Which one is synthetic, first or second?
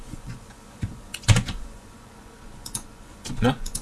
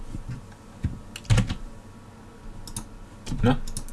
first